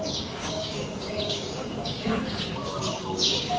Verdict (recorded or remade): remade